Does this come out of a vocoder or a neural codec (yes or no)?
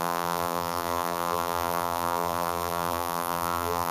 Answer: yes